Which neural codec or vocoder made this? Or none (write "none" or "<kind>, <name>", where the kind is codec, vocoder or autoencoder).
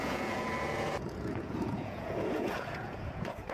vocoder, Vocos